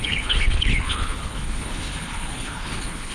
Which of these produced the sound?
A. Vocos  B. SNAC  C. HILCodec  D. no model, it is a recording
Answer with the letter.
C